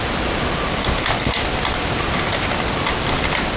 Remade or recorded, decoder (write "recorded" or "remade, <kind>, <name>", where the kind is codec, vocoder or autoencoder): recorded